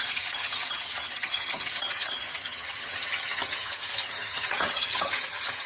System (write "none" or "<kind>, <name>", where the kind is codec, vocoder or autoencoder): vocoder, HiFi-GAN